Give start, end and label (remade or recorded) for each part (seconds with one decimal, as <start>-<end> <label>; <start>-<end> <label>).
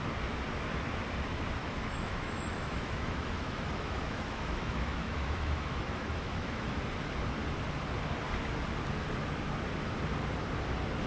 0.0-1.6 recorded; 1.6-6.8 remade; 6.8-11.1 recorded